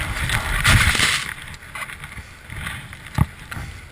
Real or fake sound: real